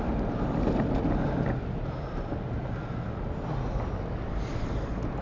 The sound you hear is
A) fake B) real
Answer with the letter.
B